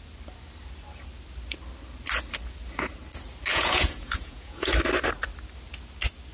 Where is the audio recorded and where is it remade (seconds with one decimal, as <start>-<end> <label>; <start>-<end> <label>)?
0.0-3.5 recorded; 3.5-4.7 remade; 4.7-6.3 recorded